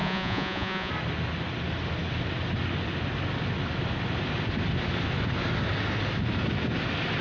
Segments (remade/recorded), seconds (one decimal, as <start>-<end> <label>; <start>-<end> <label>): 0.0-0.9 remade; 0.9-7.2 recorded